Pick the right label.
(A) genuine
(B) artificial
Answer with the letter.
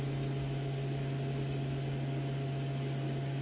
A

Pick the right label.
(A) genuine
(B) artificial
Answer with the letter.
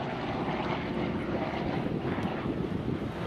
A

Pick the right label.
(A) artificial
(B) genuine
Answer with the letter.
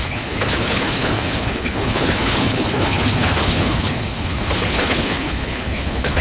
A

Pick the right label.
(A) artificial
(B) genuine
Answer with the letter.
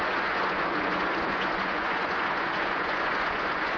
A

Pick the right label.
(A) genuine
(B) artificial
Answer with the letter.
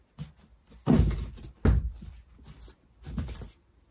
A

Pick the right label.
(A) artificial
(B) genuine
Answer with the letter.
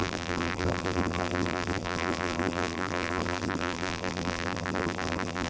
A